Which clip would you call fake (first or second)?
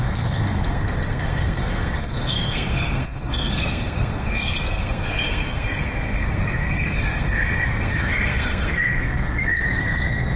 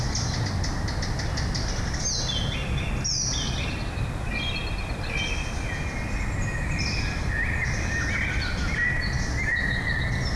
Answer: first